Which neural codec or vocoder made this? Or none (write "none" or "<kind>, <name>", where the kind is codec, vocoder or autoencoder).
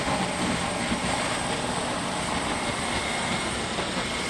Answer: none